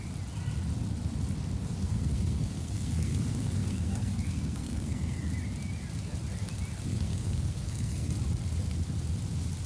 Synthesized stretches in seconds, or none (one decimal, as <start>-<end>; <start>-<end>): 1.8-5.2; 6.9-8.1